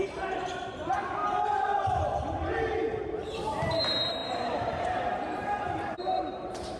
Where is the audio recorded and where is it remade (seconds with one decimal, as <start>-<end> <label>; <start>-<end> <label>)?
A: 0.0-6.8 remade